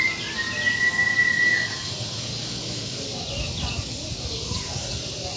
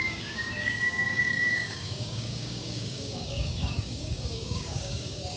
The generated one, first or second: second